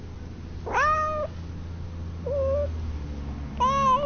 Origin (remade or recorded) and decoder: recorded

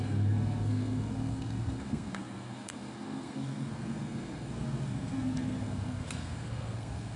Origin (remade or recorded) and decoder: remade, codec, SNAC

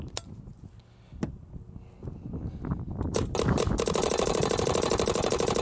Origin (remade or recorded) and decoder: recorded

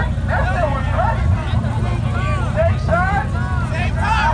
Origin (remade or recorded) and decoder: recorded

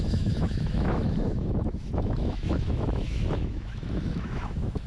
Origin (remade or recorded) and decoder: remade, autoencoder, DAC-VAE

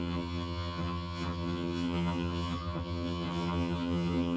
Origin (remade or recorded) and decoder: remade, vocoder, HiFi-GAN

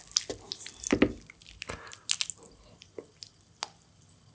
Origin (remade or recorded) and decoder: recorded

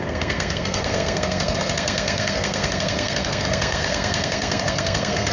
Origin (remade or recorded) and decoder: remade, codec, SNAC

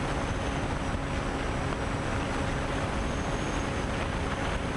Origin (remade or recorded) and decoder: recorded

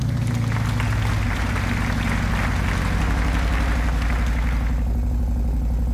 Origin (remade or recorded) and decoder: recorded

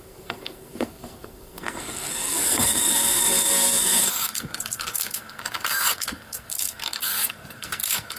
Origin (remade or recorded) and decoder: remade, codec, SNAC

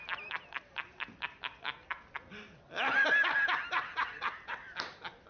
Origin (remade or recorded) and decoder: remade, vocoder, BigVGAN v2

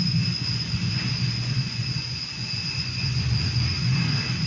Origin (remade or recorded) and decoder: remade, vocoder, Vocos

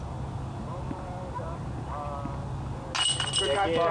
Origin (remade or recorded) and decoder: recorded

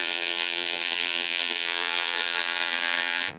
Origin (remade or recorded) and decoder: remade, vocoder, BigVGAN v2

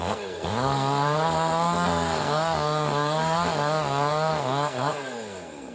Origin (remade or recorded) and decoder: remade, codec, SNAC